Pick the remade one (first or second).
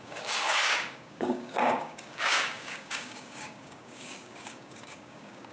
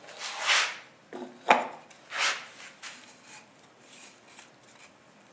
first